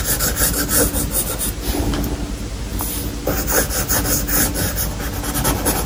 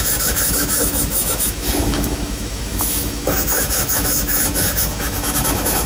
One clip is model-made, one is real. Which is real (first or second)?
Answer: first